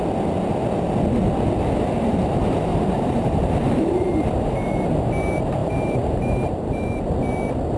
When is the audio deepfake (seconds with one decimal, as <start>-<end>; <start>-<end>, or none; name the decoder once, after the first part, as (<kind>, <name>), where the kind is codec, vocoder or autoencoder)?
2.7-5.1 (vocoder, BigVGAN v2); 5.6-7.0